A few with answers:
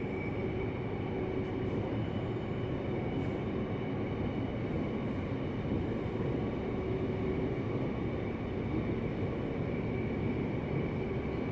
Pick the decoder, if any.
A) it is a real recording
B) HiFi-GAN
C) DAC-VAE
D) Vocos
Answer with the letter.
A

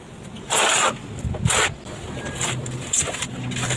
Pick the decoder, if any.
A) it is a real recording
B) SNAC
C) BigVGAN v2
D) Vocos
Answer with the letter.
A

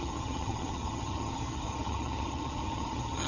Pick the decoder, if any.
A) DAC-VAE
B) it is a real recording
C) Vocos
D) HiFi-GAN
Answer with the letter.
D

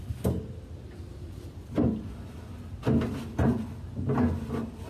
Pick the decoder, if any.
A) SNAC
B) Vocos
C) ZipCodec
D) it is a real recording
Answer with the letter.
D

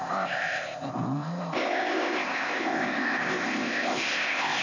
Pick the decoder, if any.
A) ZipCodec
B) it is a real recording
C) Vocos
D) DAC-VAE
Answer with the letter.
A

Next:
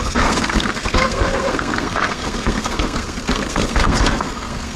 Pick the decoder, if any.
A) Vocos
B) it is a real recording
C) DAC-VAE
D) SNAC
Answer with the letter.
D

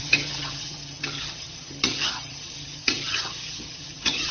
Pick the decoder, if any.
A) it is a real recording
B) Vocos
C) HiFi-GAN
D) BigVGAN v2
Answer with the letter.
C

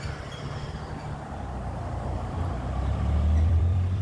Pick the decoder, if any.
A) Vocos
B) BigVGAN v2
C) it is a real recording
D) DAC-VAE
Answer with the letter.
B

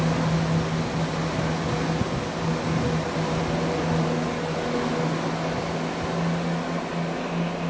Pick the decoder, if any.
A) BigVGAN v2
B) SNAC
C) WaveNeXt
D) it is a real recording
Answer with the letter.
D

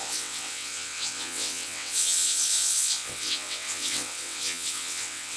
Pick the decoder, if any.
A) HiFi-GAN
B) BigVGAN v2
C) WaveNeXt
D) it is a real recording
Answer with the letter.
C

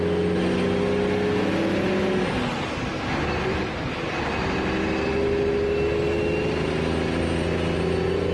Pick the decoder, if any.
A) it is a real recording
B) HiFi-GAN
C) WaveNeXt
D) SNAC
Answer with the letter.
A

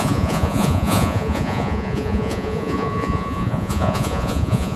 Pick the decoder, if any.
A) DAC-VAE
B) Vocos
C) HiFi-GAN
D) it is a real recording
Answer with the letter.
B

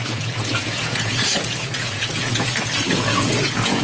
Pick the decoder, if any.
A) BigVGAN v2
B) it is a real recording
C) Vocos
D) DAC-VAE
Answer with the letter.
C